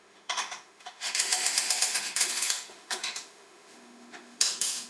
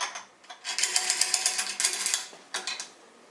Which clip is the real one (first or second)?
second